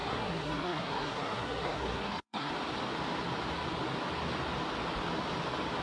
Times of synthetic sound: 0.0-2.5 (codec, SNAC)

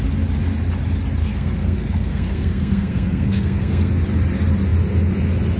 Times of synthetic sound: 1.2-3.9 (codec, SNAC)

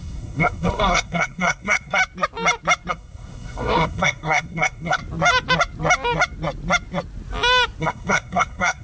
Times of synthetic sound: 0.0-2.0 (codec, SNAC); 2.9-5.0; 7.8-8.8

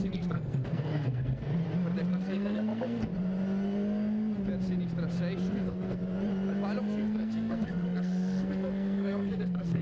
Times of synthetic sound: 0.0-1.5 (codec, SNAC); 2.1-3.1; 5.5-6.0; 6.8-9.8